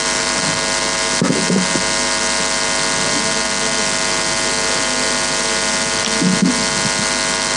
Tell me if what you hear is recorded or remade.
recorded